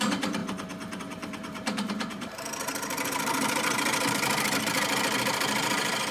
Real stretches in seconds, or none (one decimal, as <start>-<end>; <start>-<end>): 0.4-1.0